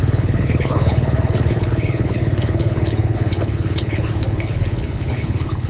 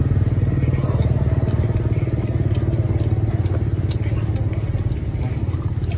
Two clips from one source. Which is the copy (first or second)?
first